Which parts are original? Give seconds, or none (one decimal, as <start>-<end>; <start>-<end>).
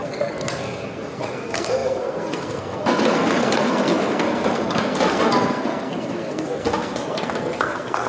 none